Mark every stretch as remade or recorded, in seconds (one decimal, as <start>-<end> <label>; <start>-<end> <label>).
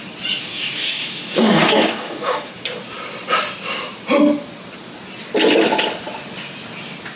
0.0-0.4 recorded; 0.4-2.5 remade; 2.5-7.2 recorded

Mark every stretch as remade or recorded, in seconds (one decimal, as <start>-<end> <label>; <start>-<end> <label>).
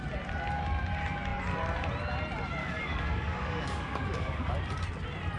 0.0-2.6 recorded; 2.6-4.5 remade; 4.5-5.4 recorded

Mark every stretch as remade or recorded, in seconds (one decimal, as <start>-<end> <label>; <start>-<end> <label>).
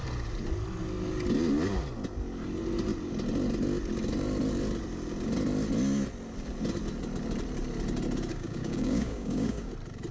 0.0-8.3 recorded; 8.3-9.7 remade; 9.7-10.1 recorded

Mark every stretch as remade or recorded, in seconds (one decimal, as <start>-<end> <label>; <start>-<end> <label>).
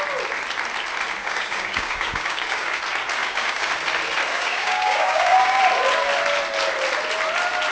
0.0-1.2 recorded; 1.2-2.8 remade; 2.8-3.2 recorded; 3.2-3.7 remade; 3.7-4.3 recorded; 4.3-5.6 remade; 5.6-7.7 recorded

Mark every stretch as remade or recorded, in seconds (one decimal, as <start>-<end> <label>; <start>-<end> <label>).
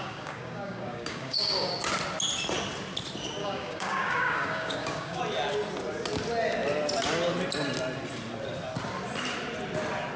0.0-1.7 remade; 1.7-3.4 recorded; 3.4-5.2 remade; 5.2-10.2 recorded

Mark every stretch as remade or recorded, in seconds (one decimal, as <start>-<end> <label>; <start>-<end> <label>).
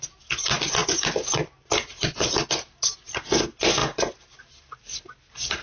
0.0-5.6 recorded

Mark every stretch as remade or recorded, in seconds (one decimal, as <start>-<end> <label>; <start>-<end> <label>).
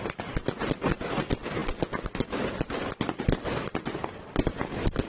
0.0-5.1 recorded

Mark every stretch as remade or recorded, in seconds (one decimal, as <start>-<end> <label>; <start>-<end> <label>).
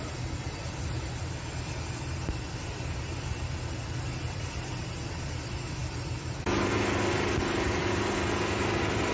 0.0-9.1 recorded